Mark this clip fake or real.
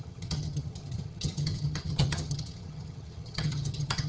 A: fake